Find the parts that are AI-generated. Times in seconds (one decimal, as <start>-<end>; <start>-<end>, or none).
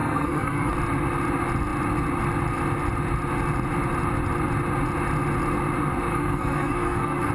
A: 0.0-0.7; 6.1-7.3